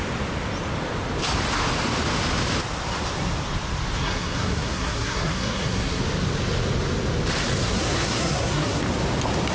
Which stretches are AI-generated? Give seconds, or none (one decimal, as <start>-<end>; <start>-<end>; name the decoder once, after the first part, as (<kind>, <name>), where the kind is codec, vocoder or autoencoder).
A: 4.0-6.0 (codec, SNAC); 7.6-8.8